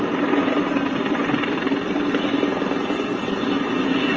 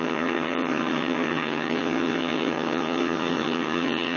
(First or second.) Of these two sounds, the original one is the first